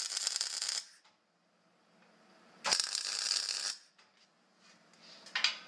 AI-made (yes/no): no